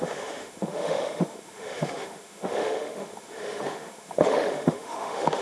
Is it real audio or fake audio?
fake